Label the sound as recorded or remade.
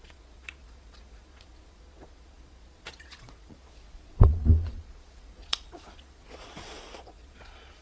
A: remade